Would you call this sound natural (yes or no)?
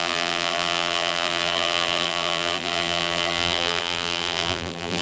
no